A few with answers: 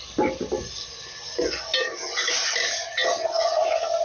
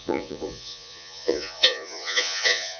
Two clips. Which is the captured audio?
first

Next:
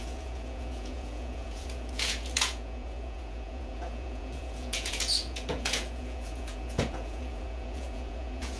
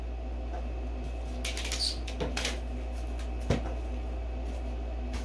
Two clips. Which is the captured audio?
second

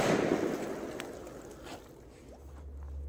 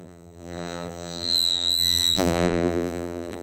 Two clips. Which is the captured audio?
first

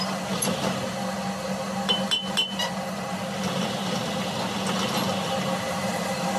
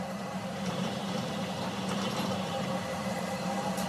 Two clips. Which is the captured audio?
first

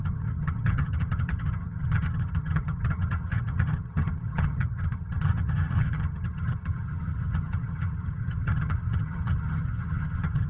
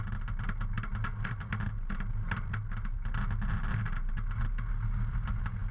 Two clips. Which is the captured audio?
second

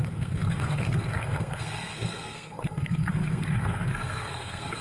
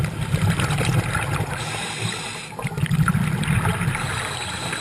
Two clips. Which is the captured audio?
second